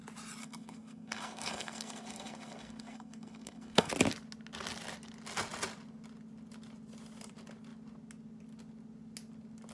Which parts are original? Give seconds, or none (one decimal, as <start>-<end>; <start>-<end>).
0.0-0.4; 3.9-9.7